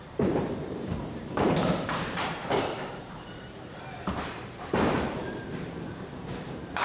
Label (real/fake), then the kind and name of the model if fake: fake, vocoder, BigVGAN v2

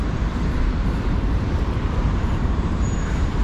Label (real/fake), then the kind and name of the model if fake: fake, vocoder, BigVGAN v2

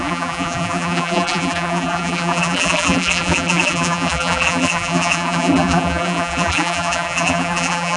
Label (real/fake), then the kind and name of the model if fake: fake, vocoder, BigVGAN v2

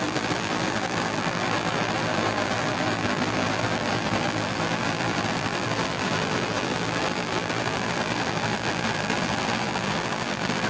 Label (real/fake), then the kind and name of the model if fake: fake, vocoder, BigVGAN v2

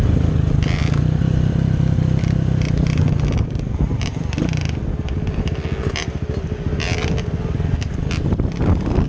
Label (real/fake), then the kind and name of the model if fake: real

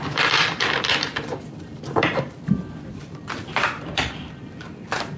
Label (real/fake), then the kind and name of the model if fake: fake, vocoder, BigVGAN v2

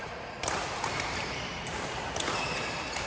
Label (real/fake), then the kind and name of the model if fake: fake, vocoder, BigVGAN v2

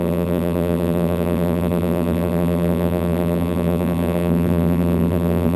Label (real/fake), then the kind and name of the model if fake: fake, vocoder, BigVGAN v2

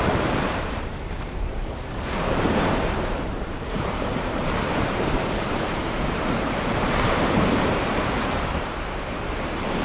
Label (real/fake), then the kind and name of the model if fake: fake, vocoder, BigVGAN v2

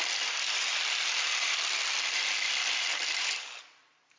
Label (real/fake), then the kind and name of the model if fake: fake, vocoder, BigVGAN v2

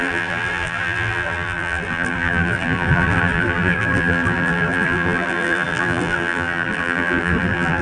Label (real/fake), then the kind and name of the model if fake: fake, vocoder, BigVGAN v2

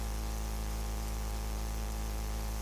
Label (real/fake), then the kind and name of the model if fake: fake, vocoder, BigVGAN v2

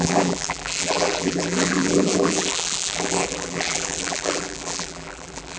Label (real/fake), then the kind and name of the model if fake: fake, vocoder, BigVGAN v2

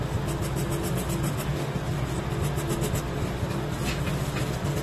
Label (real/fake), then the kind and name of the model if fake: real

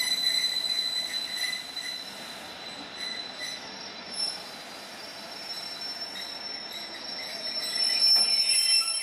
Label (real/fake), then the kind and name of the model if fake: real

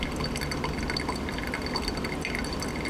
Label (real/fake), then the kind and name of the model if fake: real